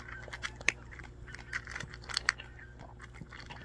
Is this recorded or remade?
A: recorded